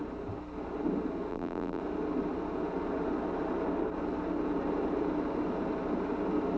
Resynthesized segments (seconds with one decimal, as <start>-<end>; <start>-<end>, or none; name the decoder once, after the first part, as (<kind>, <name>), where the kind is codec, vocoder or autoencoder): 1.3-1.8 (vocoder, BigVGAN v2)